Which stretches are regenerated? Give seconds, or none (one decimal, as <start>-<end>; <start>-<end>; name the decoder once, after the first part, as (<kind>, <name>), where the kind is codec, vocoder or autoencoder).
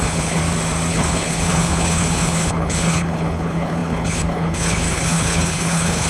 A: 0.0-0.4 (codec, HILCodec); 0.9-6.1